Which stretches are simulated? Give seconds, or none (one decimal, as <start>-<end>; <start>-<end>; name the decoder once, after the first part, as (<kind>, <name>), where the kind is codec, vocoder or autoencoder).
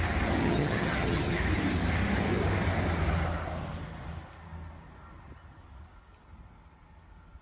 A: 0.4-1.4 (vocoder, HiFi-GAN)